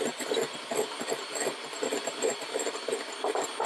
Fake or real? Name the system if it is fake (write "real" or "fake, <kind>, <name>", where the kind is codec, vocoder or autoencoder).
real